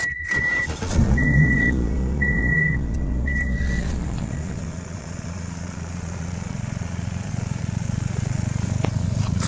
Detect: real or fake fake